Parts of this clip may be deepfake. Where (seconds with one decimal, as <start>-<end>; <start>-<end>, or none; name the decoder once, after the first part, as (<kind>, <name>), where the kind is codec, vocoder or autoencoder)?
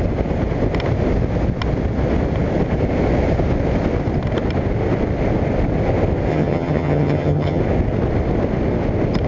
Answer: 6.3-7.6 (vocoder, HiFi-GAN)